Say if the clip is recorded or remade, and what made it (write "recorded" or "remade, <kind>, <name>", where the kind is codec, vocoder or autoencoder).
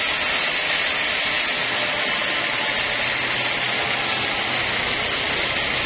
recorded